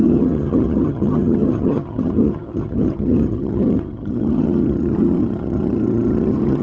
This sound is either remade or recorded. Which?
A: remade